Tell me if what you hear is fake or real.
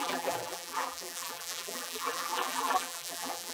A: fake